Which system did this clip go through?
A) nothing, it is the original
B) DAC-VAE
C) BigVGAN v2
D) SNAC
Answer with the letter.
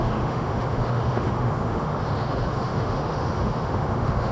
B